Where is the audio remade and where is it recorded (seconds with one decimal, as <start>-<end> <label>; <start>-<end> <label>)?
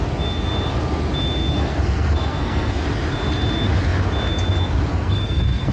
0.0-1.6 recorded; 1.6-2.7 remade; 2.7-4.9 recorded; 4.9-5.7 remade